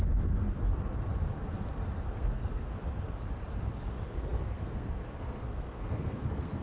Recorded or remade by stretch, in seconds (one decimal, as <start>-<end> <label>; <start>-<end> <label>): 0.0-0.6 remade; 0.6-2.0 recorded; 2.0-2.7 remade; 2.7-3.8 recorded; 3.8-6.6 remade